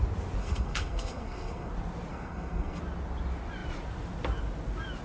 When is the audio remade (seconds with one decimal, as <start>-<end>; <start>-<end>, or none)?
0.4-1.7; 2.1-2.8